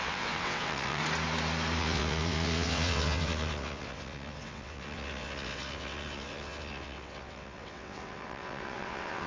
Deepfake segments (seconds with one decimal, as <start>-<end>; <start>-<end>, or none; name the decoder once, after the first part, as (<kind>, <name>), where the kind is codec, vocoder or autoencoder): 0.0-1.0 (vocoder, WaveNeXt); 1.8-9.3